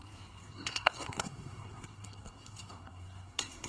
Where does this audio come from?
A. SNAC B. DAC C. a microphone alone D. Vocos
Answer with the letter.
A